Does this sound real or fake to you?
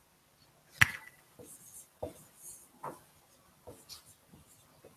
real